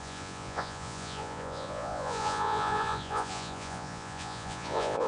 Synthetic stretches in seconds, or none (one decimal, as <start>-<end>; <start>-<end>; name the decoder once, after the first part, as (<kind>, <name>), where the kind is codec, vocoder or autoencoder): 0.0-5.1 (vocoder, Vocos)